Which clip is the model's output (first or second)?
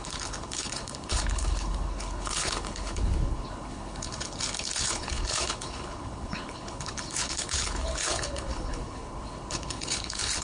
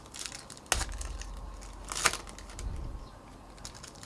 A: first